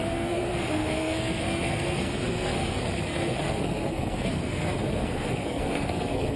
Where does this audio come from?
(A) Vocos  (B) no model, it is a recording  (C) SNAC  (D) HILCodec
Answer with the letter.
C